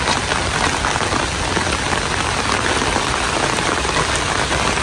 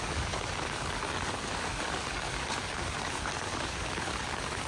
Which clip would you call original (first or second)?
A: first